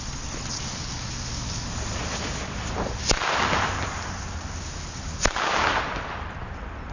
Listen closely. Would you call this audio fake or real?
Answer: real